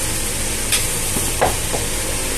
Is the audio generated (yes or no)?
no